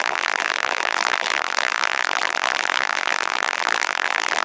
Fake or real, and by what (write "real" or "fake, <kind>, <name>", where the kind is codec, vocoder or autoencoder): fake, vocoder, BigVGAN v2